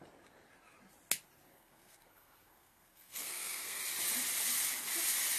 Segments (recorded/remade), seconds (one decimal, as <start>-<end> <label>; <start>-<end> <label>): 0.0-1.5 recorded; 1.5-3.8 remade; 3.8-5.4 recorded